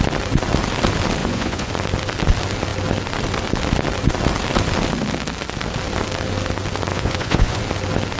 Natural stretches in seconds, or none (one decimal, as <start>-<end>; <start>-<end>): 0.0-1.2; 1.7-6.9; 7.6-8.2